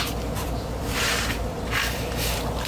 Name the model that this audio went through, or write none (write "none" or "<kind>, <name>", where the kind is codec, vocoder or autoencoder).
vocoder, BigVGAN v2